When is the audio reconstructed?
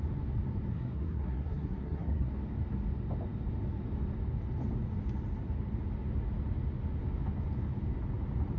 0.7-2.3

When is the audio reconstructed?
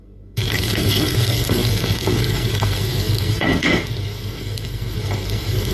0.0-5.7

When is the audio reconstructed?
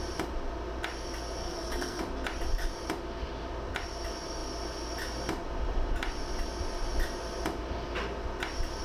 1.4-2.0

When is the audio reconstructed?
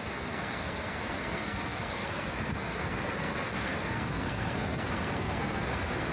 0.0-6.1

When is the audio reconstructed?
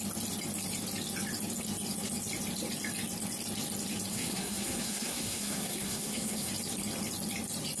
4.1-6.5